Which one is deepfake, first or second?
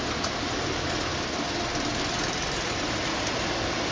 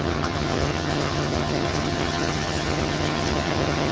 second